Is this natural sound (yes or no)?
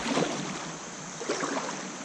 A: yes